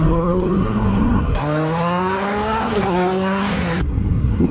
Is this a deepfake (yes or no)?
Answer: yes